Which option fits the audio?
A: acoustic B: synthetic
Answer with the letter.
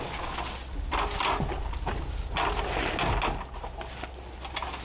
A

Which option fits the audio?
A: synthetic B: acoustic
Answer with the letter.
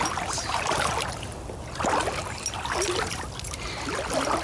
B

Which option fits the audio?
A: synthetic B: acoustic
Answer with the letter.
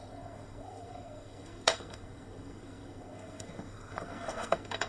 A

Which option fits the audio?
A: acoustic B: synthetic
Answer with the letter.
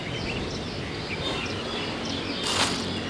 A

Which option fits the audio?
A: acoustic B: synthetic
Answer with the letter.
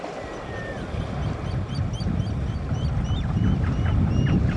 A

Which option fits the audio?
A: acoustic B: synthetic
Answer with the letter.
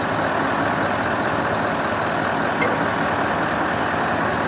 A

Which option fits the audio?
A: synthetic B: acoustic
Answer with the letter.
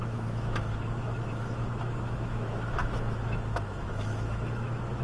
A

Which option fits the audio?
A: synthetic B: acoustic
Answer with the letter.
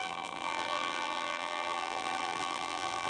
A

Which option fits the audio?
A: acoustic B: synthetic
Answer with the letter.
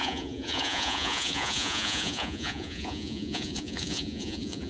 B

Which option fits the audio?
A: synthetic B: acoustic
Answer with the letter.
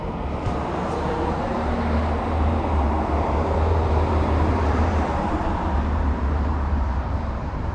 A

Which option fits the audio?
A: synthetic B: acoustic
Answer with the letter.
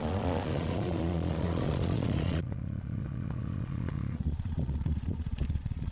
A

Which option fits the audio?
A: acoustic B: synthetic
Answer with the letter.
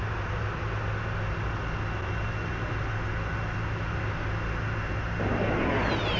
A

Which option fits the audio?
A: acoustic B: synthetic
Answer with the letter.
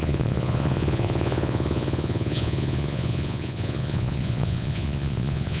B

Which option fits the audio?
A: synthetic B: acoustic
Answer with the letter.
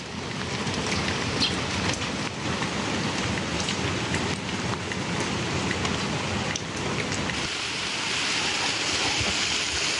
B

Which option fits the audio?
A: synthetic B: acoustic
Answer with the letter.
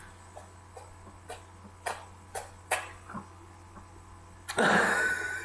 B